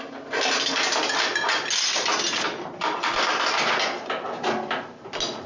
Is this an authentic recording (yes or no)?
yes